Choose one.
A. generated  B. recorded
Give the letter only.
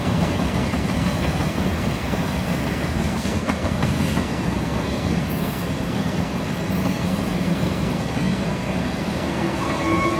A